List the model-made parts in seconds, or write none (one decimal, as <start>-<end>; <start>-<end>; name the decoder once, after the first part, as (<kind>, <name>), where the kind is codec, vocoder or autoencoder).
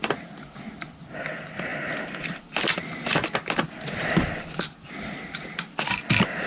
none